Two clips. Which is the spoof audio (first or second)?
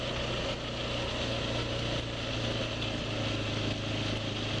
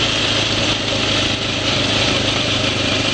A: second